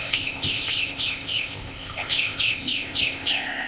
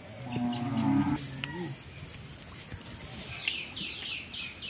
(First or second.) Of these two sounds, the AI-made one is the first